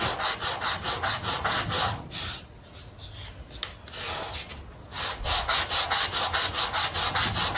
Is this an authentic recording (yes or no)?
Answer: yes